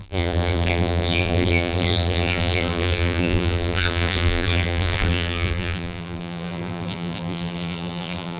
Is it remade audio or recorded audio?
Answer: remade